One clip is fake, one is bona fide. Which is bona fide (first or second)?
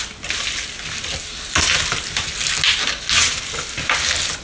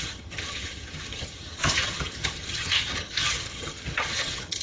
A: first